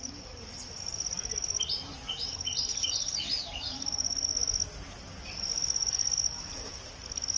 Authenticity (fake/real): real